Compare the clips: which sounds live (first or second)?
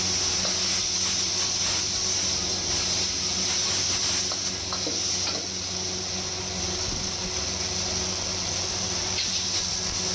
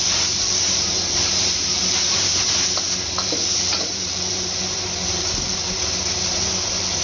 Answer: first